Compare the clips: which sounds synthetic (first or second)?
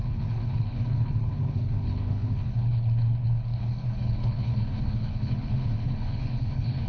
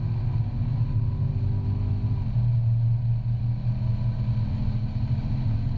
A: first